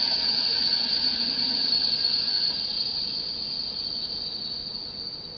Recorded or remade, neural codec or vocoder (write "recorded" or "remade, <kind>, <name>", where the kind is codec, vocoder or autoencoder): recorded